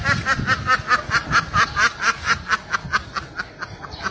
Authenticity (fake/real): real